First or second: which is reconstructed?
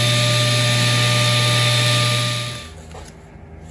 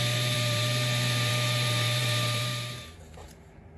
second